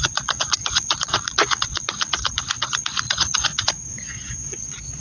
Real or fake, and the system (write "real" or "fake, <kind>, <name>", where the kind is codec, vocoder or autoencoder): fake, vocoder, Vocos